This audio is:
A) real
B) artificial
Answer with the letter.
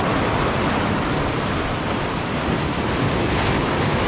A